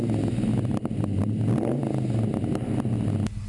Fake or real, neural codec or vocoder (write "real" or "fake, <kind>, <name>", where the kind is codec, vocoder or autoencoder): real